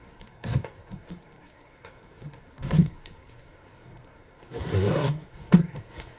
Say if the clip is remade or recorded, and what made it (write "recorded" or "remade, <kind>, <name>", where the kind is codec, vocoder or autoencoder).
remade, codec, SNAC